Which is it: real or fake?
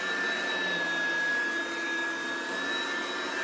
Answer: real